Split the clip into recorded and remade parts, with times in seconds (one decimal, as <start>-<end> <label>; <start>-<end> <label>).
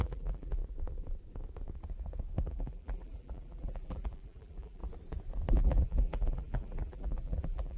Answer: 0.0-0.6 remade; 0.6-2.5 recorded; 2.5-4.8 remade; 4.8-5.5 recorded; 5.5-7.8 remade